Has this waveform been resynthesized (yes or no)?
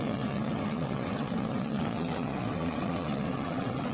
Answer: yes